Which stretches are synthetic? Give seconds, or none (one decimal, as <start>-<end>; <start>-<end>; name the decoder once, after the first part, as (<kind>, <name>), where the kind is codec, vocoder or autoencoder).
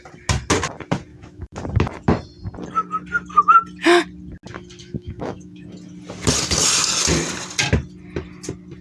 1.1-1.6 (autoencoder, DAC-VAE); 4.8-5.7